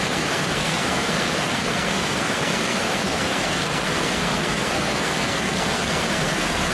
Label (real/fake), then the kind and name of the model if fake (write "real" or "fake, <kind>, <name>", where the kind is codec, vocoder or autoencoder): fake, codec, SNAC